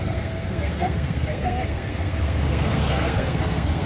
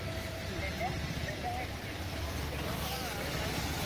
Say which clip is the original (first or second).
second